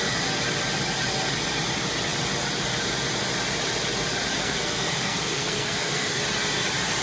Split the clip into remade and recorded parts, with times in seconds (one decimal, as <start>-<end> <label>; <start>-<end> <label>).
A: 0.0-4.4 recorded; 4.4-6.2 remade; 6.2-7.0 recorded